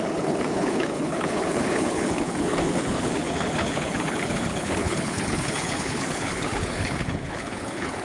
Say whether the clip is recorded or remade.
remade